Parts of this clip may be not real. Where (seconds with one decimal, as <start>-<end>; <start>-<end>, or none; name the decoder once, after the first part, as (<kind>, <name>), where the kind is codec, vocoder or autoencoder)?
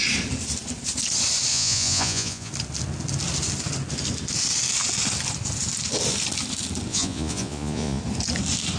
1.5-2.5 (vocoder, Vocos); 6.9-8.0